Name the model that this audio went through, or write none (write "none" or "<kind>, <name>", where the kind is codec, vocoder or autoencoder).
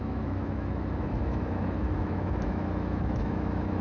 autoencoder, DAC-VAE